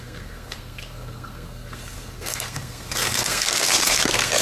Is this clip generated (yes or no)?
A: yes